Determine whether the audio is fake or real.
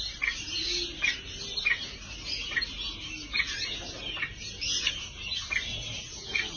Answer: real